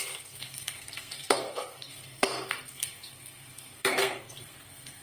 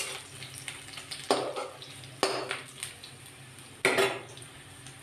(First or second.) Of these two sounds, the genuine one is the second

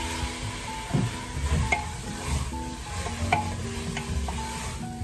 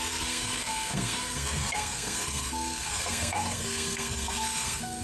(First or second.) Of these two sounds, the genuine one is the first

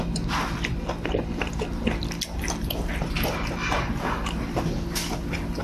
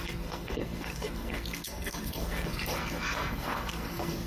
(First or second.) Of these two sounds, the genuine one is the first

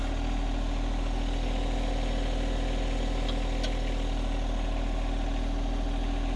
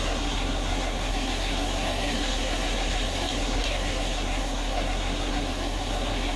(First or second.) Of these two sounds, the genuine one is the first